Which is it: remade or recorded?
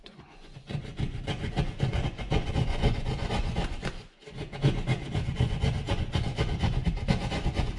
remade